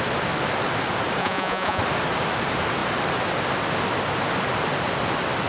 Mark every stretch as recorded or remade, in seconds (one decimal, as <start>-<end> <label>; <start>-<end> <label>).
0.0-1.2 recorded; 1.2-1.8 remade; 1.8-5.5 recorded